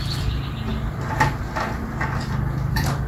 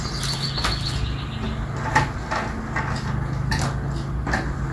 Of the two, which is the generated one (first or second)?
first